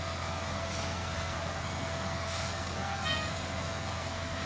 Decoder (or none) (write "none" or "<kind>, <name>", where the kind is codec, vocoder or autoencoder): codec, SNAC